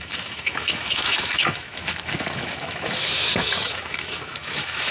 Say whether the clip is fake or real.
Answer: fake